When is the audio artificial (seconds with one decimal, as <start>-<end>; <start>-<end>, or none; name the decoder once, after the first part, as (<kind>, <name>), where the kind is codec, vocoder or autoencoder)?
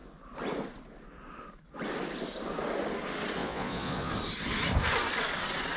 3.4-4.1 (vocoder, Vocos)